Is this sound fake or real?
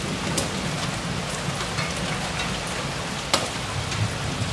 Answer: real